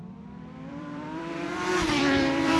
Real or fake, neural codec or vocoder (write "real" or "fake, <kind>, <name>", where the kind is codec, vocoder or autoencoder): fake, vocoder, BigVGAN v2